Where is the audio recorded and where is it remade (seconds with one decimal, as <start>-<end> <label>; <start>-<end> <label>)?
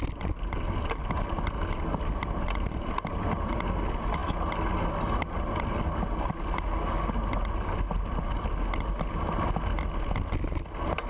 0.0-11.1 recorded